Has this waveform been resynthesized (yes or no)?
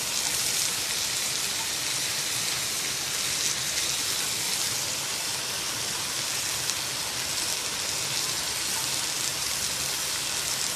no